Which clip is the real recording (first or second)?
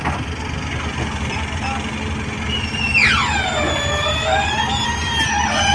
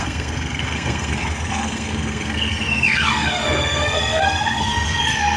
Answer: first